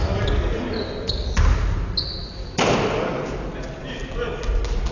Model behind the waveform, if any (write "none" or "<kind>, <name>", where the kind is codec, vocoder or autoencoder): none